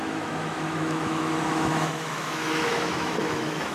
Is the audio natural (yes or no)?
no